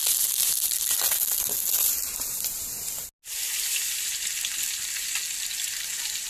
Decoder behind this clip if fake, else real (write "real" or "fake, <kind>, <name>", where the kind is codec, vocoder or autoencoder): real